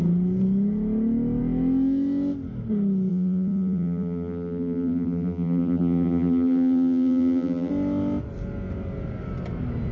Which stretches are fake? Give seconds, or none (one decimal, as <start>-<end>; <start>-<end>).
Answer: 3.1-7.7